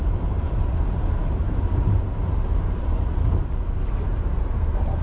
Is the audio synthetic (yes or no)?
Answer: yes